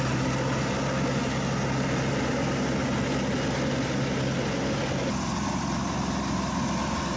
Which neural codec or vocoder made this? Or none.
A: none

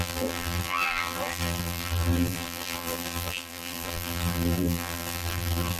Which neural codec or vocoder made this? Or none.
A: vocoder, BigVGAN v2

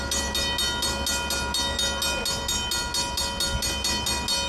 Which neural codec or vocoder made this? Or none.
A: none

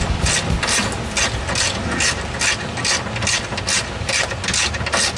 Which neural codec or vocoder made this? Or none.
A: none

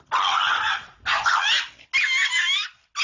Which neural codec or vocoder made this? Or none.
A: none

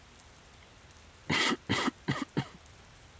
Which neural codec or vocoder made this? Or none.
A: none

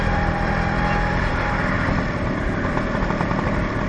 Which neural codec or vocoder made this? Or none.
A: vocoder, BigVGAN v2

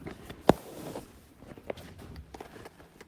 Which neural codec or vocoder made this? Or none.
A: none